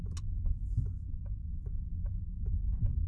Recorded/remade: recorded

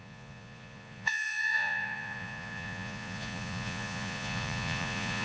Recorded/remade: remade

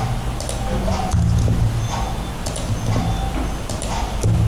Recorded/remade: recorded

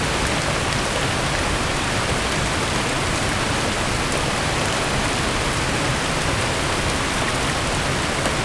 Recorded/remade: recorded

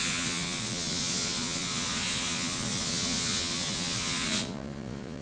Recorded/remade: remade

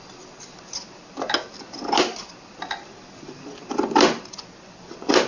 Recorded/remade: recorded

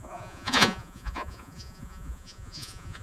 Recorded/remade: remade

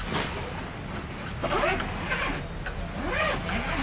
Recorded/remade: recorded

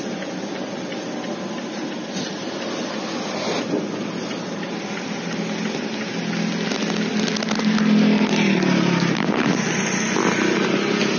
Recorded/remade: recorded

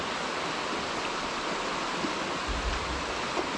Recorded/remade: recorded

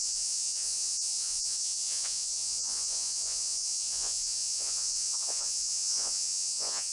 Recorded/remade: remade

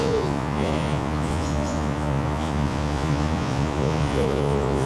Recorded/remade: remade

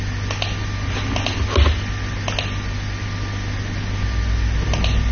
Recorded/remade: recorded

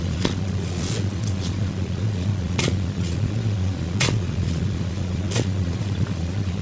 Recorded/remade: remade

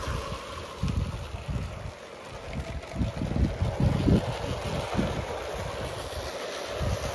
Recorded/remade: recorded